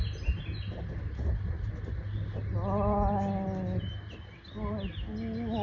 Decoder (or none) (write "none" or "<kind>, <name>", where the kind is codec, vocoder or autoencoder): none